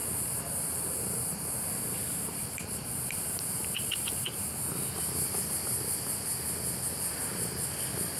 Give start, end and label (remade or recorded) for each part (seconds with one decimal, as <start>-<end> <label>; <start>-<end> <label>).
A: 0.0-4.6 remade; 4.6-8.2 recorded